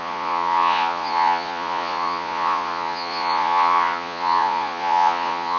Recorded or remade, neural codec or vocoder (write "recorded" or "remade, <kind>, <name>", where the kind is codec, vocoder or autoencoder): remade, vocoder, Vocos